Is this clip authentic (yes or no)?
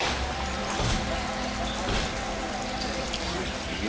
yes